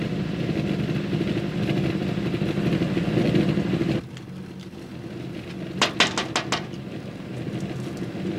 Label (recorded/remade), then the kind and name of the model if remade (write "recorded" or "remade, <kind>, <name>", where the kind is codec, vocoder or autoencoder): recorded